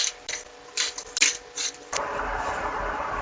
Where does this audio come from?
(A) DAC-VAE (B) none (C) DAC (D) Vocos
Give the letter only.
B